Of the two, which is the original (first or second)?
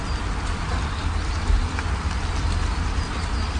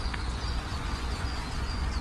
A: first